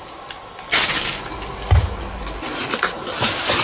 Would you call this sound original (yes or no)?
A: yes